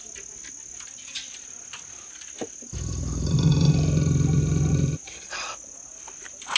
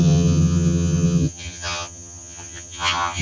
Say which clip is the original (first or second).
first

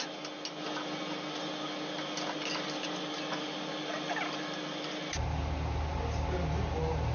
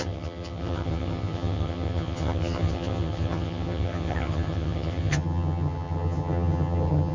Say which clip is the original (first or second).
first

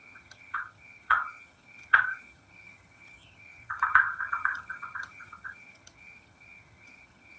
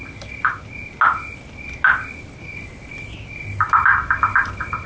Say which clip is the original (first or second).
second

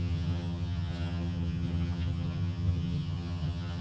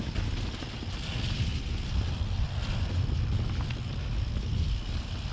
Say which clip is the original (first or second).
second